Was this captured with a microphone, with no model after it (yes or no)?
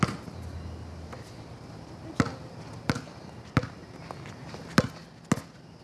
yes